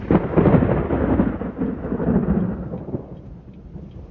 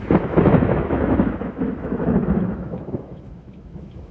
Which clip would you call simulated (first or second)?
second